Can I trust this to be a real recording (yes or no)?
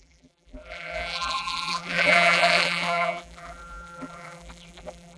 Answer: no